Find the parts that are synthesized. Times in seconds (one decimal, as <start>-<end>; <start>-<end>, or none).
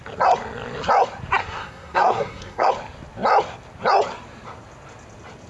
1.4-2.7